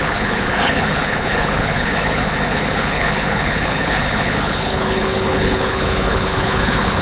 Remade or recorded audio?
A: remade